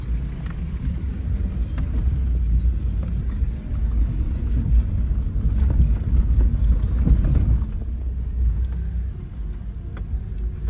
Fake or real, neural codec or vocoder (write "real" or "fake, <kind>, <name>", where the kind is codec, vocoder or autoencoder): real